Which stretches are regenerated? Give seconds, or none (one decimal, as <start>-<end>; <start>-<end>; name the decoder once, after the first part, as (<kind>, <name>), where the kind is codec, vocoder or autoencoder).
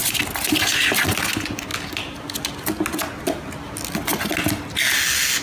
none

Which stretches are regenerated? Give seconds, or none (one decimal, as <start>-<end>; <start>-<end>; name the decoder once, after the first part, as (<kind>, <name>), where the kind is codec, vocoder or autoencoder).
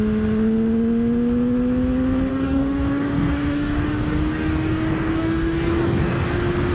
2.3-6.3 (codec, DAC)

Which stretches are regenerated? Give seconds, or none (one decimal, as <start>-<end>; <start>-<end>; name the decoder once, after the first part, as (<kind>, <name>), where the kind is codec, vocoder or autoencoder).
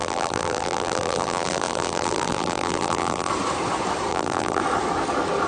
0.0-3.3 (vocoder, BigVGAN v2); 4.1-4.6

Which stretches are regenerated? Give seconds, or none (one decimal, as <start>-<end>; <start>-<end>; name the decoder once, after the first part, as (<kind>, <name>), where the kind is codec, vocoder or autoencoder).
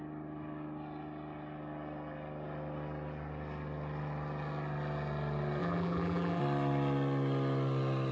5.6-6.4 (vocoder, BigVGAN v2)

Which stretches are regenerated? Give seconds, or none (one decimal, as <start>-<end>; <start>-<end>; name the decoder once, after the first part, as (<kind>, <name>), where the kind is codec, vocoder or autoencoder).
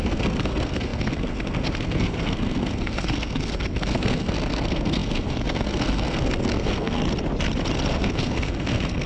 0.0-7.0 (codec, SNAC); 7.9-9.1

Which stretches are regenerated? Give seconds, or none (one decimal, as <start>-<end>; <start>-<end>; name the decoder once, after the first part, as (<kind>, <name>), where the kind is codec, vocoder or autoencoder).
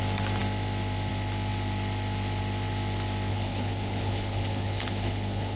3.3-5.6 (codec, HILCodec)